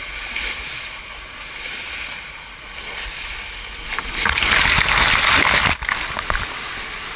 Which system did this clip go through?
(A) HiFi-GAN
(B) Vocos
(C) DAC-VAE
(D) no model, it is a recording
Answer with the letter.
D